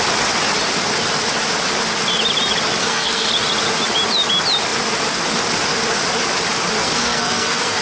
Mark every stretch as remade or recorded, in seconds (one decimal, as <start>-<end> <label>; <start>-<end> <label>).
0.0-2.8 recorded; 2.8-3.3 remade; 3.3-6.8 recorded; 6.8-7.8 remade